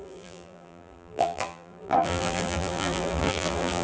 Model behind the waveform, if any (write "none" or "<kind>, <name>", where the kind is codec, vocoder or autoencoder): vocoder, BigVGAN v2